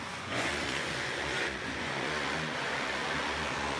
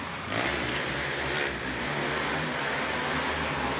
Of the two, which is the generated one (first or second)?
first